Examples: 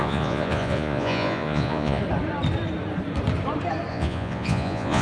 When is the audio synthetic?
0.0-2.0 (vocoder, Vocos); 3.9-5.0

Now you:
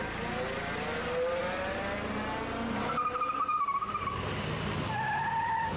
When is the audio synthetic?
none

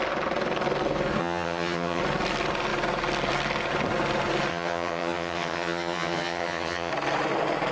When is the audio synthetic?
1.2-2.0 (vocoder, HiFi-GAN); 4.5-6.9

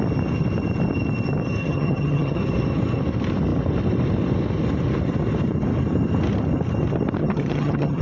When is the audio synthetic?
1.6-2.4 (vocoder, HiFi-GAN); 7.2-8.0

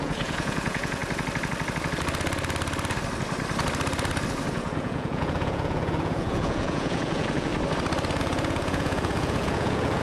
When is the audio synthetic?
0.0-1.0 (vocoder, Vocos); 4.5-7.5; 8.2-10.0

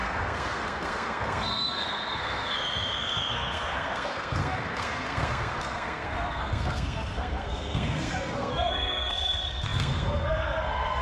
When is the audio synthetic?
0.0-11.0 (codec, SNAC)